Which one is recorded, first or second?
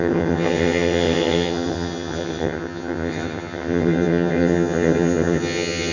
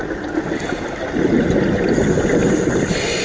second